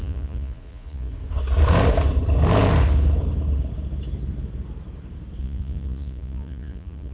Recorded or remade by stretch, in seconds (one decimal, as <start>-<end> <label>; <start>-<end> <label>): 0.0-1.1 remade; 1.1-5.4 recorded; 5.4-7.1 remade